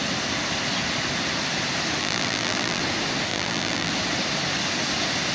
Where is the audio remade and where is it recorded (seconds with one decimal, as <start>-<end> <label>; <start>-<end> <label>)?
0.0-2.0 recorded; 2.0-2.8 remade; 2.8-3.3 recorded; 3.3-3.9 remade; 3.9-5.3 recorded